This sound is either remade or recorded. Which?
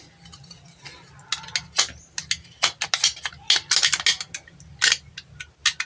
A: recorded